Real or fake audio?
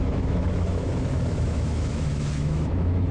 fake